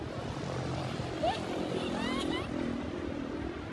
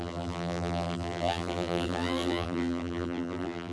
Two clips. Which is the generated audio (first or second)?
second